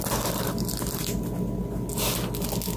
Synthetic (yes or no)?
no